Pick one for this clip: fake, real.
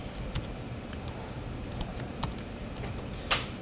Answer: real